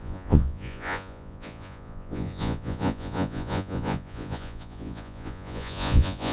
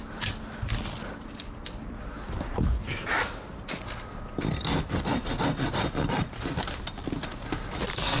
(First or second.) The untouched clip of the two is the second